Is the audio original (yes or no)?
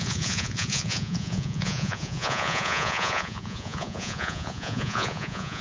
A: no